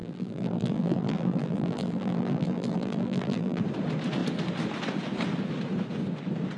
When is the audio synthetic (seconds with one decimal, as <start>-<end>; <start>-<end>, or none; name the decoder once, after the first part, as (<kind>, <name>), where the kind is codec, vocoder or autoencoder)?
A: 0.0-3.6 (vocoder, BigVGAN v2)